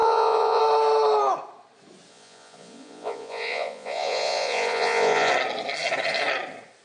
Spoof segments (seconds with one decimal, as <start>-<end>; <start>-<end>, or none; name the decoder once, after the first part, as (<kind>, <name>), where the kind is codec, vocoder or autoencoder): 0.0-0.6 (vocoder, Vocos); 2.1-5.3